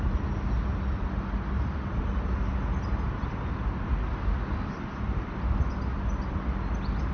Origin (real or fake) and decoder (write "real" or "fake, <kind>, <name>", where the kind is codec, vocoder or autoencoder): real